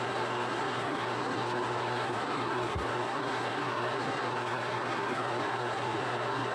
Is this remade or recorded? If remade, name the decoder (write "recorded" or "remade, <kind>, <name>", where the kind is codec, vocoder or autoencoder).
remade, codec, SNAC